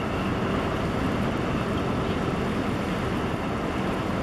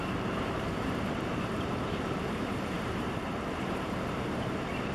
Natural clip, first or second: first